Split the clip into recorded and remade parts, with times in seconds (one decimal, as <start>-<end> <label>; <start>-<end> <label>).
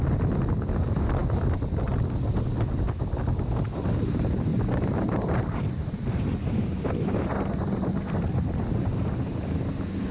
0.0-4.5 recorded; 4.5-6.5 remade; 6.5-10.1 recorded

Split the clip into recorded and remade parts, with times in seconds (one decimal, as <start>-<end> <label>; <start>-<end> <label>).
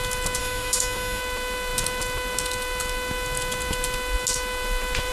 0.0-0.4 recorded; 0.4-1.2 remade; 1.2-5.1 recorded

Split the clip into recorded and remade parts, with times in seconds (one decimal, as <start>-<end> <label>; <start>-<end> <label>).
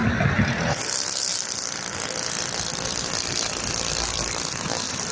0.0-5.1 recorded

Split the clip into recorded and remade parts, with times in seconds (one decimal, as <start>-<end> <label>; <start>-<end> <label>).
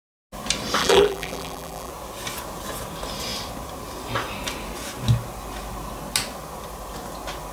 0.0-0.8 recorded; 0.8-1.9 remade; 1.9-7.5 recorded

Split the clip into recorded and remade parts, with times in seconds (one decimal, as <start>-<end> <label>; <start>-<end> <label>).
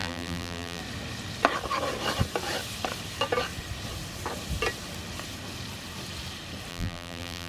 0.0-0.8 remade; 0.8-6.7 recorded; 6.7-7.5 remade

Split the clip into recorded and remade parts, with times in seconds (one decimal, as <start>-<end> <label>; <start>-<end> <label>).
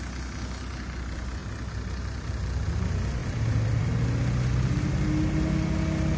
0.0-3.2 recorded; 3.2-3.9 remade; 3.9-6.2 recorded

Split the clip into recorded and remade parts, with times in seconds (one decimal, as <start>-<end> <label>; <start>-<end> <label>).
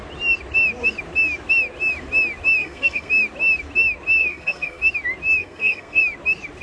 0.0-2.6 recorded; 2.6-3.1 remade; 3.1-4.2 recorded; 4.2-4.8 remade; 4.8-5.4 recorded; 5.4-6.0 remade; 6.0-6.6 recorded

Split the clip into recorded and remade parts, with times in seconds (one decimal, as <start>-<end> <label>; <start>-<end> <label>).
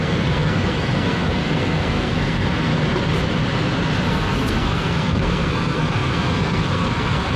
0.0-2.7 remade; 2.7-4.1 recorded; 4.1-7.4 remade